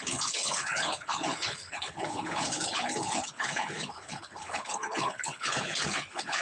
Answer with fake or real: fake